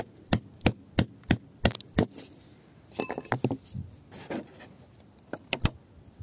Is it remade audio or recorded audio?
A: recorded